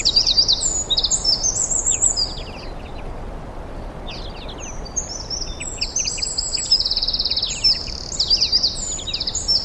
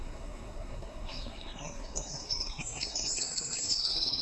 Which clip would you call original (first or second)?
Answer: first